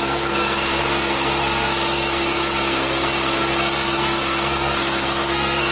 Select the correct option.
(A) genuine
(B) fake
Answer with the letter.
B